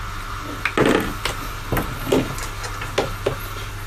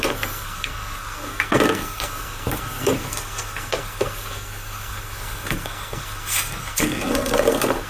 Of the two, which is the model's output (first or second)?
second